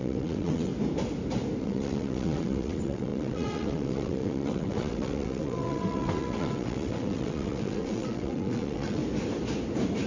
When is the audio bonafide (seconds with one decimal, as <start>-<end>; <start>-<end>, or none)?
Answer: 0.7-1.6; 9.0-10.1